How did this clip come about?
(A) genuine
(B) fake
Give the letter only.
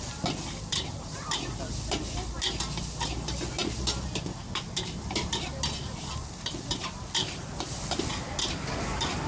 A